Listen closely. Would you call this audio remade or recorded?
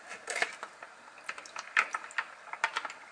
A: recorded